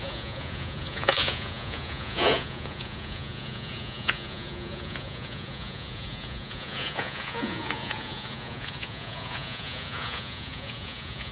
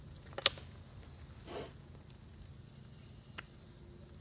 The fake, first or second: first